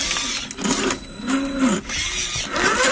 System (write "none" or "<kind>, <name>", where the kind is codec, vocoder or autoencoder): none